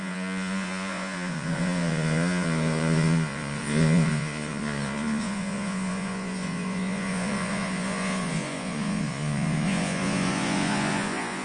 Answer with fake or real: fake